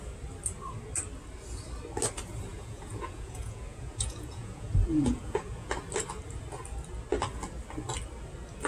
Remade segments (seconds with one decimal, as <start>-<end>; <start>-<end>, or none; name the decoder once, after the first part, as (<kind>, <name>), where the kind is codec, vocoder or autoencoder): 2.5-5.7 (vocoder, Vocos)